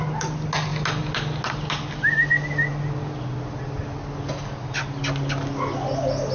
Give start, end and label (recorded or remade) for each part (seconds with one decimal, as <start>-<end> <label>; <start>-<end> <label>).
0.0-6.3 recorded